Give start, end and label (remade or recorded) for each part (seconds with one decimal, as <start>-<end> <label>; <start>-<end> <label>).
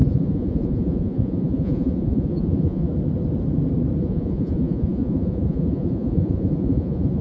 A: 0.0-2.9 remade; 2.9-4.0 recorded; 4.0-7.2 remade